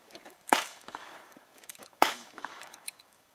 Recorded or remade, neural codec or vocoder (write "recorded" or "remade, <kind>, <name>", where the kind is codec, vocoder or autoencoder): remade, codec, DAC